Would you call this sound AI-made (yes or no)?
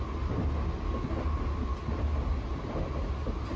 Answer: no